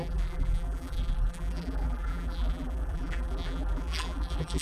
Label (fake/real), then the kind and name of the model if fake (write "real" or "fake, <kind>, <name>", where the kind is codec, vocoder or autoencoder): fake, vocoder, BigVGAN v2